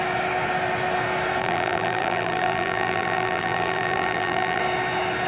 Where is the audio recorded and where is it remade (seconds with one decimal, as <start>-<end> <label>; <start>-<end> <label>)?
0.0-1.4 recorded; 1.4-4.6 remade; 4.6-5.3 recorded